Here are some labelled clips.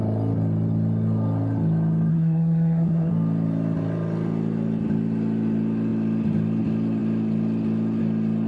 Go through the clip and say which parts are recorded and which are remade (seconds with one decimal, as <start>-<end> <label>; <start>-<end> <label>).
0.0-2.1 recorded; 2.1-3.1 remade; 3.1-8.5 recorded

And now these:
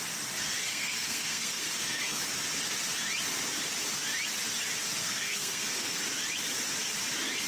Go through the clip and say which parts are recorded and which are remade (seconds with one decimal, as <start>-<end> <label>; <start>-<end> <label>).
0.0-0.7 recorded; 0.7-2.2 remade; 2.2-5.0 recorded; 5.0-6.0 remade; 6.0-7.5 recorded

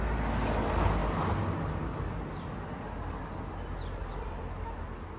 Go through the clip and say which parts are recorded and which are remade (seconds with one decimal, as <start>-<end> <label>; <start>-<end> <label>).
0.0-5.2 recorded

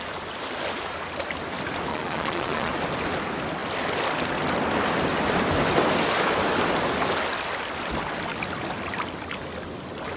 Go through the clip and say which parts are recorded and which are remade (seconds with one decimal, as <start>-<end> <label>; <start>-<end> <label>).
0.0-1.9 recorded; 1.9-2.7 remade; 2.7-10.2 recorded

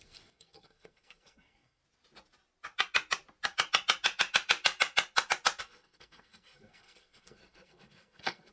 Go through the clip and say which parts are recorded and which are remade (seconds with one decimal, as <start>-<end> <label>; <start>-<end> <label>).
0.0-1.8 remade; 1.8-5.6 recorded; 5.6-8.5 remade

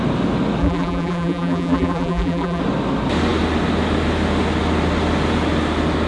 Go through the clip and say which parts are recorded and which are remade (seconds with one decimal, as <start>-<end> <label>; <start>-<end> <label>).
0.0-0.6 recorded; 0.6-2.6 remade; 2.6-6.1 recorded

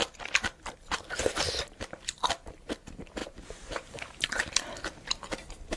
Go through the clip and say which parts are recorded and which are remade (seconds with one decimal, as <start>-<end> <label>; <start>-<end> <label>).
0.0-0.4 recorded; 0.4-1.2 remade; 1.2-3.2 recorded; 3.2-4.5 remade; 4.5-5.8 recorded